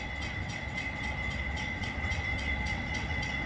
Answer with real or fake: fake